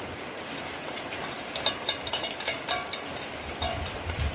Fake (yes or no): no